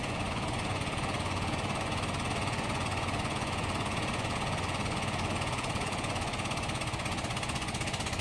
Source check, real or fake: fake